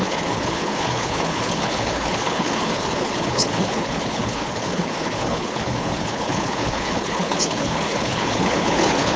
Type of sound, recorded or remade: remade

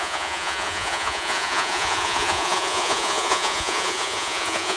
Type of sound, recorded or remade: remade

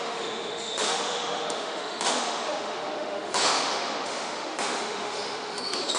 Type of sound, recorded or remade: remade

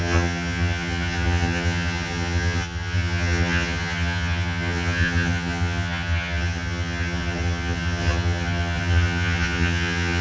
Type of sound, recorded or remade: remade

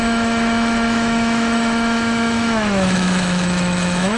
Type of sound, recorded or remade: remade